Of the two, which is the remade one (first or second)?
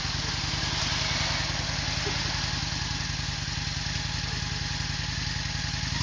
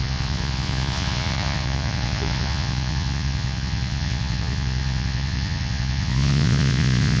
second